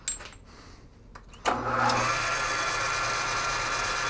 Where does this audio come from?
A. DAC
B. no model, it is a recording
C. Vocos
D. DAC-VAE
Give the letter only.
B